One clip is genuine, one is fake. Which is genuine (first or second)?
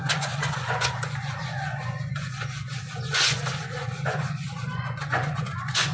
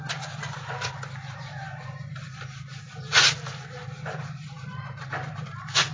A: second